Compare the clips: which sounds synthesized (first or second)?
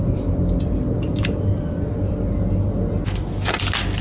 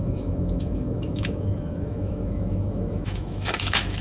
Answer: second